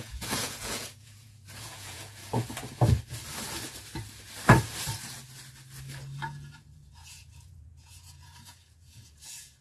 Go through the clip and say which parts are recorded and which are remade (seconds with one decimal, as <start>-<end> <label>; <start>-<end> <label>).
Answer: 0.0-2.2 remade; 2.2-6.2 recorded; 6.2-9.6 remade